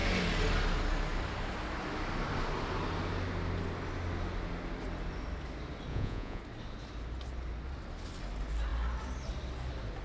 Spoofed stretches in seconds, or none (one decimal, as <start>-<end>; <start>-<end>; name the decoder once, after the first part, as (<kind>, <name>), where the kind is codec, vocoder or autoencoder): 5.9-6.4 (vocoder, Vocos)